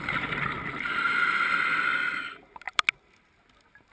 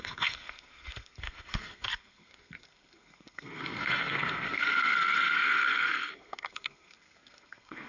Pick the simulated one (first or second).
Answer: second